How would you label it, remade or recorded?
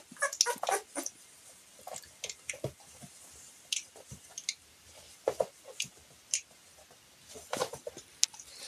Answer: recorded